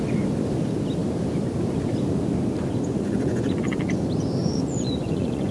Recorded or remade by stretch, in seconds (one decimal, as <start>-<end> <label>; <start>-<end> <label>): 0.0-2.9 recorded; 2.9-4.0 remade; 4.0-4.4 recorded; 4.4-5.5 remade